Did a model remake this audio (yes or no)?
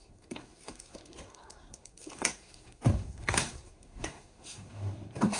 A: yes